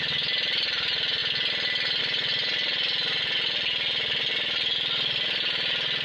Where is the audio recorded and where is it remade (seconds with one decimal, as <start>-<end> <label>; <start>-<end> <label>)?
0.0-6.0 recorded